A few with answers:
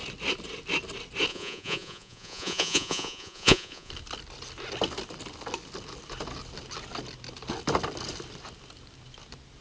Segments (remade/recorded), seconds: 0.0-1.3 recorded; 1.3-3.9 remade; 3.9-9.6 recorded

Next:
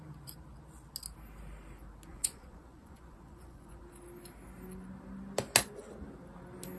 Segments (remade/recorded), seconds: 0.0-2.1 recorded; 2.1-3.8 remade; 3.8-6.8 recorded

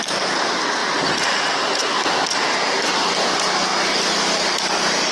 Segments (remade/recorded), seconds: 0.0-5.1 recorded

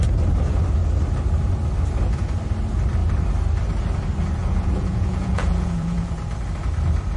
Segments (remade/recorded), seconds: 0.0-4.4 recorded; 4.4-6.1 remade; 6.1-7.2 recorded

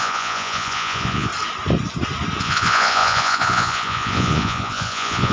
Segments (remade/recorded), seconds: 0.0-1.3 remade; 1.3-2.4 recorded; 2.4-5.3 remade